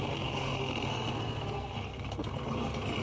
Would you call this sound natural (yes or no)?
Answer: no